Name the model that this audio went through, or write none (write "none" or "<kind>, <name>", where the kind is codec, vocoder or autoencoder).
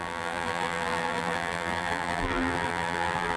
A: vocoder, BigVGAN v2